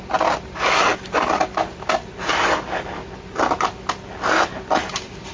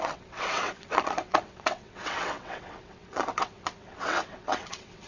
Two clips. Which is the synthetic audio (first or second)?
second